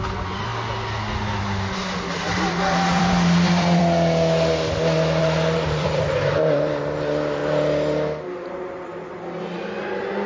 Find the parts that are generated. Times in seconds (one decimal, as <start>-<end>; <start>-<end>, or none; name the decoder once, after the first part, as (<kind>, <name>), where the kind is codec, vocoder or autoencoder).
2.9-3.8 (vocoder, BigVGAN v2); 5.2-6.8